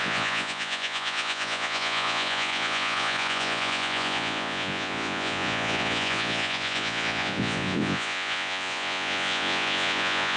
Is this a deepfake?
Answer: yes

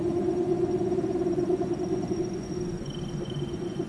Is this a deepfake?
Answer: yes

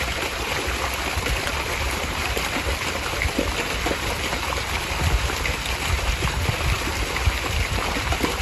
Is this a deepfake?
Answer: yes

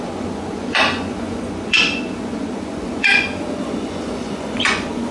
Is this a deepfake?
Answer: yes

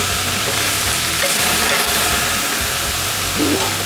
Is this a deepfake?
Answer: no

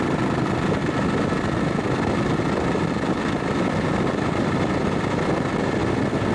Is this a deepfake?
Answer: no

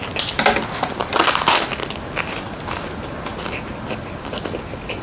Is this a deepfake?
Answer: no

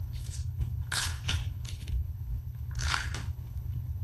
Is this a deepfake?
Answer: yes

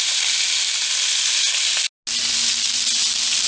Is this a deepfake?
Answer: no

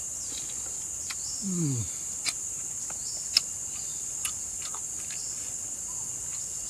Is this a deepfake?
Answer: no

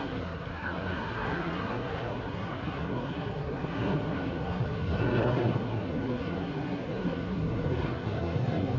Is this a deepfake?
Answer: yes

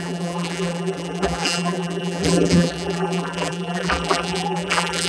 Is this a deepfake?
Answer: yes